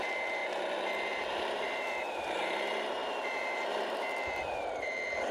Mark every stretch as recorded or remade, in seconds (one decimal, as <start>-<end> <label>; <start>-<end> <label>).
0.0-0.4 remade; 0.4-1.1 recorded; 1.1-5.3 remade